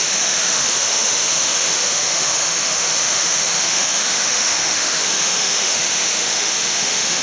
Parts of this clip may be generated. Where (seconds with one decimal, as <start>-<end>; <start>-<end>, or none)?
0.0-7.2